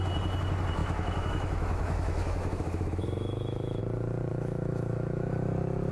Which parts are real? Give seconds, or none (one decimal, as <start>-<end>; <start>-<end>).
0.0-0.8; 3.8-4.3; 5.3-5.9

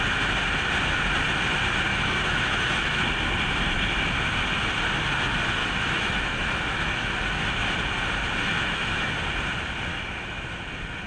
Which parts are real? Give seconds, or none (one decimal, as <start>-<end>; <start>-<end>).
0.0-1.9; 3.0-5.6; 7.1-8.4; 9.1-9.9; 10.4-11.1

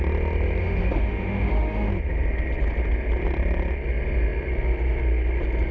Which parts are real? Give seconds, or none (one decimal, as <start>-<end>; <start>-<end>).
0.0-0.6; 1.9-5.7

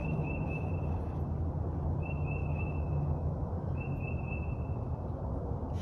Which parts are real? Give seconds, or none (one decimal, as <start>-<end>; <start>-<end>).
0.7-2.4; 3.5-5.8

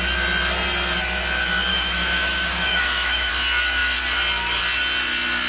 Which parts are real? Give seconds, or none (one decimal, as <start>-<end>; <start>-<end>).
0.0-1.7; 3.3-5.5

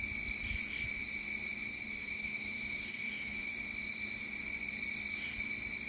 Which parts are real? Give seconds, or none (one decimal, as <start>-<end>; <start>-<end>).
0.0-2.0; 3.5-5.9

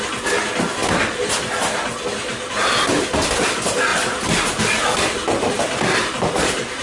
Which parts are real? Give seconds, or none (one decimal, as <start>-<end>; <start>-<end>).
0.0-6.8

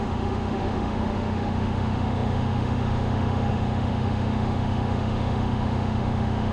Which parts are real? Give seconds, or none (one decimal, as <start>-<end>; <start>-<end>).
none